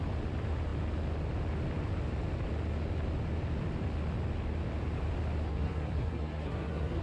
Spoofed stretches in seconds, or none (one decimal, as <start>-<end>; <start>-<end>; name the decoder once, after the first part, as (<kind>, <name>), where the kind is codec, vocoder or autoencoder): 5.5-7.0 (codec, SNAC)